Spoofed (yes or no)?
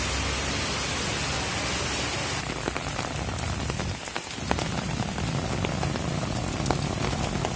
no